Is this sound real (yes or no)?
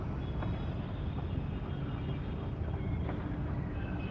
yes